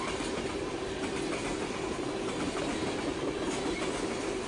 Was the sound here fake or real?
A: real